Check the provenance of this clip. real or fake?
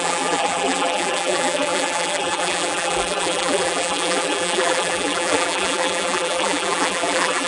fake